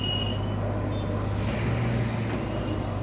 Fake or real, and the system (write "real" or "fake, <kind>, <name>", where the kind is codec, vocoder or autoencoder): real